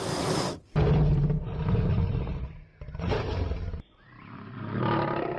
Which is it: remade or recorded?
recorded